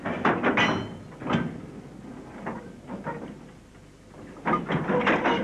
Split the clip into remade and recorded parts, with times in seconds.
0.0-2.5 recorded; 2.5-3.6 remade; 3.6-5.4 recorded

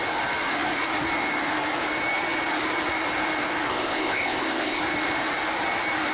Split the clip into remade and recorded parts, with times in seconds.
0.0-3.7 recorded; 3.7-4.8 remade; 4.8-6.1 recorded

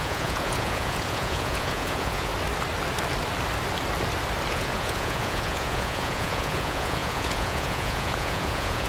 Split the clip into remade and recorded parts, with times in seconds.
0.0-2.3 remade; 2.3-4.5 recorded; 4.5-8.9 remade